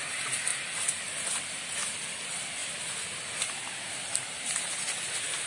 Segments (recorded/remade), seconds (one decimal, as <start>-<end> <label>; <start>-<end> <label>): 0.0-5.5 recorded

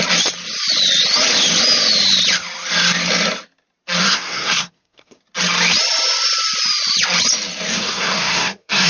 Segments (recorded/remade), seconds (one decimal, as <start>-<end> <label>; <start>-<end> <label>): 0.0-4.0 recorded; 4.0-5.2 remade; 5.2-7.7 recorded; 7.7-8.9 remade

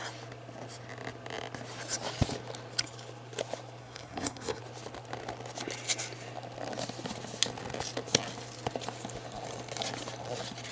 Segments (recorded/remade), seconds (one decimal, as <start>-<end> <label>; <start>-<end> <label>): 0.0-3.8 recorded; 3.8-4.6 remade; 4.6-10.7 recorded

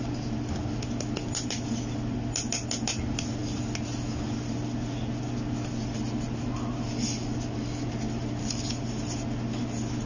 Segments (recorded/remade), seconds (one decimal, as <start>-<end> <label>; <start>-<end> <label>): 0.0-10.1 recorded